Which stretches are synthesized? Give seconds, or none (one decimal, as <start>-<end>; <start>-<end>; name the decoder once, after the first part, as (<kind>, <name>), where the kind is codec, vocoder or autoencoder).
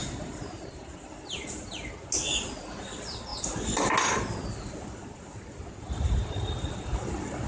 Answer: 0.0-0.7 (vocoder, BigVGAN v2)